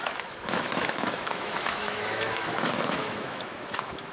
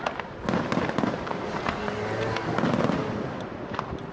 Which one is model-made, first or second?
first